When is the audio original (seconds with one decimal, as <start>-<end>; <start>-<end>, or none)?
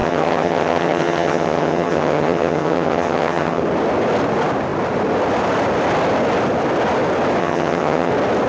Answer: 3.6-7.4; 8.1-8.5